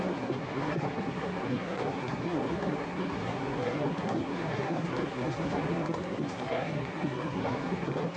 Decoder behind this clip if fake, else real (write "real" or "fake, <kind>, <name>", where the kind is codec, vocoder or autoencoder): fake, codec, SNAC